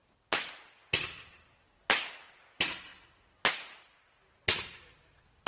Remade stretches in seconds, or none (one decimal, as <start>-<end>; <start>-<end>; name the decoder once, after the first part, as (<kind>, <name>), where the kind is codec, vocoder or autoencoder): none